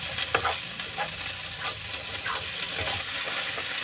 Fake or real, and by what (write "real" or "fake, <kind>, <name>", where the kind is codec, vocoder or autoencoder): real